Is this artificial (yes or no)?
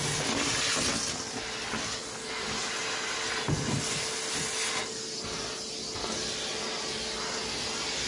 no